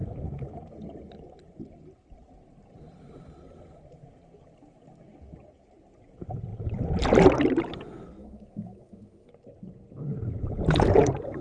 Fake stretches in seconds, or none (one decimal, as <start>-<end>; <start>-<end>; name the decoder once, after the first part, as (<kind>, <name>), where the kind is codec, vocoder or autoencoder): 8.2-9.3 (autoencoder, DAC-VAE)